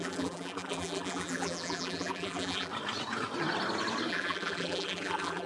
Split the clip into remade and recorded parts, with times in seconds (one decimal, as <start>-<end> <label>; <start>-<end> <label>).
0.0-2.7 remade; 2.7-4.1 recorded; 4.1-5.5 remade